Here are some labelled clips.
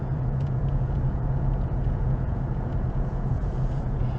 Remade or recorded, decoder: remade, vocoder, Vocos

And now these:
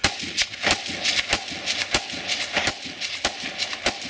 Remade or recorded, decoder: recorded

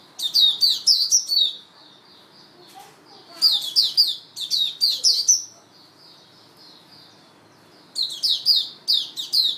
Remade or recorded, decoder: recorded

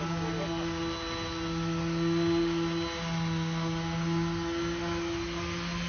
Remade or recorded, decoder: recorded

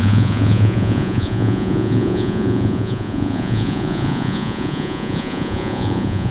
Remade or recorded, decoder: remade, vocoder, Vocos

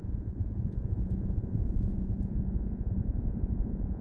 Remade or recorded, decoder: remade, vocoder, Vocos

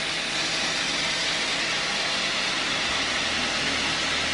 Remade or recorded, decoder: recorded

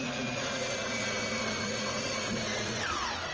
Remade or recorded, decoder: remade, vocoder, Vocos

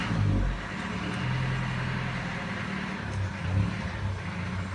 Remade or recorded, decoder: recorded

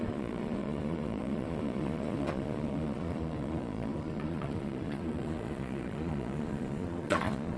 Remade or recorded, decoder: remade, vocoder, Vocos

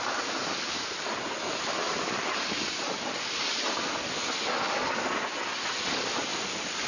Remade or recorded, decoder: recorded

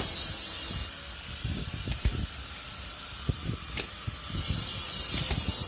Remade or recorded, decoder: recorded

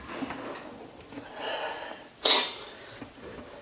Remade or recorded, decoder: recorded